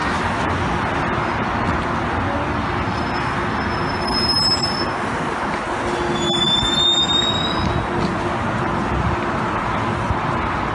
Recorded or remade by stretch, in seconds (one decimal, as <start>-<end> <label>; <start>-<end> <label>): 0.0-10.7 recorded